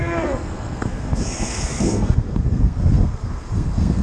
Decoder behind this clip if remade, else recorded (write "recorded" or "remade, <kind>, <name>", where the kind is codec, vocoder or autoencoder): remade, codec, SNAC